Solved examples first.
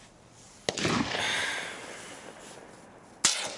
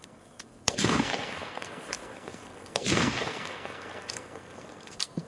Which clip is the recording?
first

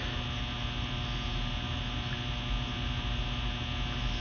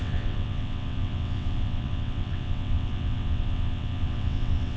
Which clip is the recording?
first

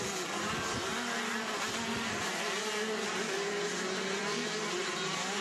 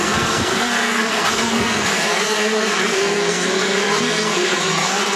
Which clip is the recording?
first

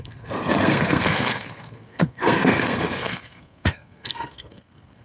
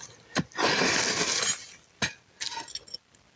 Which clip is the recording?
second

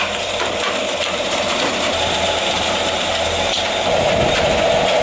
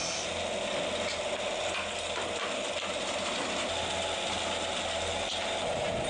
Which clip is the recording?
second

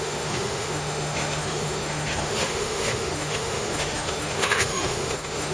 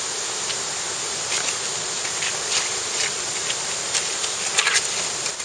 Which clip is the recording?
second